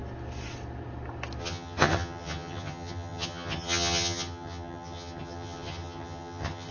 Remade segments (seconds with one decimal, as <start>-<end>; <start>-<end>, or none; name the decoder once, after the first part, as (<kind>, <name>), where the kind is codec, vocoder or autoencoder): 1.4-6.7 (vocoder, HiFi-GAN)

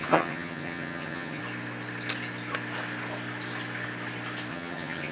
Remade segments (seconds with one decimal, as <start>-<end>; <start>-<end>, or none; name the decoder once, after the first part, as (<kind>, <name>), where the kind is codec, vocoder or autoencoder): 0.0-1.4 (vocoder, HiFi-GAN); 4.5-5.1